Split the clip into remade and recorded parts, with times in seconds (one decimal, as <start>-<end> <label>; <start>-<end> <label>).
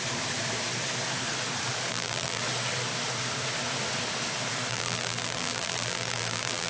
0.0-1.9 recorded; 1.9-2.4 remade; 2.4-4.7 recorded; 4.7-6.7 remade